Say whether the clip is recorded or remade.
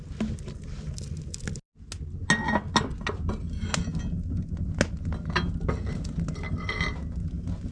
recorded